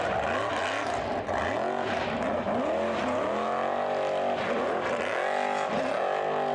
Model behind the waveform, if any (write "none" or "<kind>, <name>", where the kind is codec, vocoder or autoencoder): none